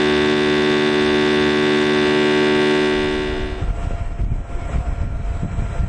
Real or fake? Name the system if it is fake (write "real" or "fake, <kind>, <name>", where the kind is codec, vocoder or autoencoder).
real